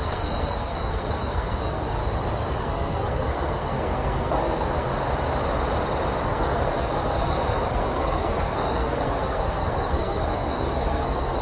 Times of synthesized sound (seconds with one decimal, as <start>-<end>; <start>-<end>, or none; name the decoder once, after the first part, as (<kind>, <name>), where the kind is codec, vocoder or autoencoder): 0.0-2.0 (codec, SNAC); 2.6-4.9; 6.2-11.4